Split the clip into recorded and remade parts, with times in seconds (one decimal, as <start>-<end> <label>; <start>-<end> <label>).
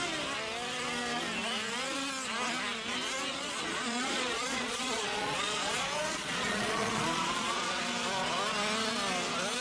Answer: 0.0-3.3 recorded; 3.3-7.8 remade; 7.8-9.6 recorded